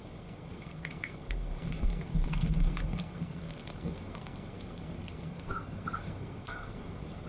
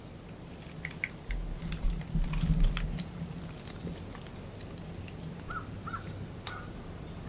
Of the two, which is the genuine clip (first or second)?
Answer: second